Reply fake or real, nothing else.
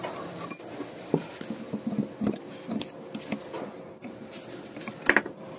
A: real